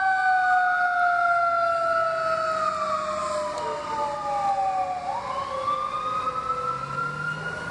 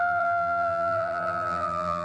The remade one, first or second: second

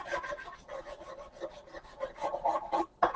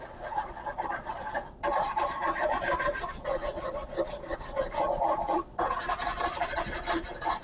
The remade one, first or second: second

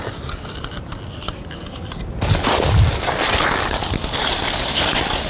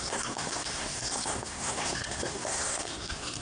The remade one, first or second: second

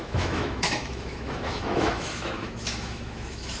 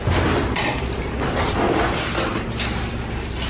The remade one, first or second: first